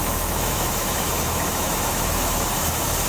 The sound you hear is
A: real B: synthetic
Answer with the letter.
B